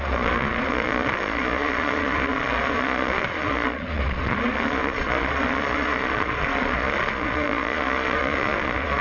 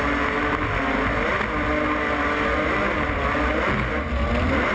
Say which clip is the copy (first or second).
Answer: first